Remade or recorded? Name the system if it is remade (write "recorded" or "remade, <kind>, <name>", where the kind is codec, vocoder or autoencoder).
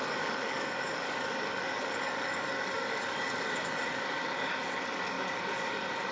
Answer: remade, codec, DAC